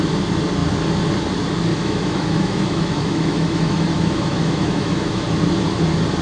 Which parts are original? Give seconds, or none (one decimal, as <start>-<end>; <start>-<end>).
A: 0.0-1.7; 5.4-6.2

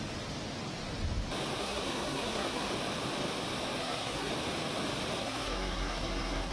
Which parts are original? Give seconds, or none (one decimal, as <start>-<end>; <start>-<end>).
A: 0.0-1.6; 2.7-3.8; 4.3-5.2

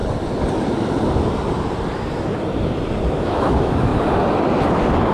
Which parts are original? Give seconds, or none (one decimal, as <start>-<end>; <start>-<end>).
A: 0.0-3.1; 3.9-5.1

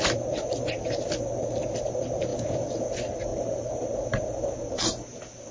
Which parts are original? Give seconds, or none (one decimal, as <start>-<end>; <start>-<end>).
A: 0.0-2.3; 2.9-5.5

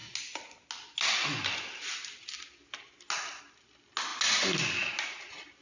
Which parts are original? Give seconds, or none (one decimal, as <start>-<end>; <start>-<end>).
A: 0.0-5.6